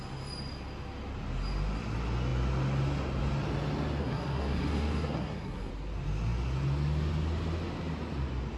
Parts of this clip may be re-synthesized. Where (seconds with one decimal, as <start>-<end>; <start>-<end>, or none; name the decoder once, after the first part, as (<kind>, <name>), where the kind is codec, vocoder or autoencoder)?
4.0-5.7 (codec, SNAC)